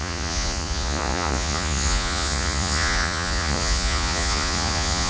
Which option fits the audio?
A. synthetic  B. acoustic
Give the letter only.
A